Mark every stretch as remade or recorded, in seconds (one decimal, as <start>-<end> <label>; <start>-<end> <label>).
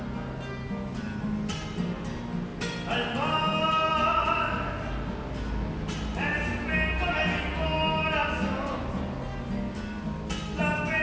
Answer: 0.0-11.0 recorded